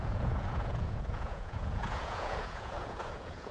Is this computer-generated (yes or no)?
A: yes